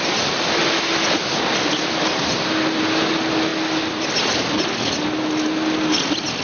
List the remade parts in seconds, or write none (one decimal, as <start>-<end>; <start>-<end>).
none